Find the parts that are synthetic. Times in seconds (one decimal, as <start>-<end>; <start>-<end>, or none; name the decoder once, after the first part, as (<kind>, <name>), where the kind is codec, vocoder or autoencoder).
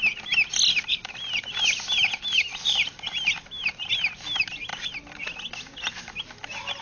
0.9-3.9 (vocoder, BigVGAN v2)